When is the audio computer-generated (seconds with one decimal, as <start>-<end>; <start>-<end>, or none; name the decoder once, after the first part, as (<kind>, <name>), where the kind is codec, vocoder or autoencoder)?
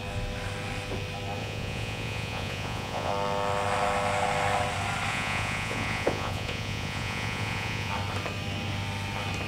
1.4-3.1 (vocoder, Vocos); 5.1-7.9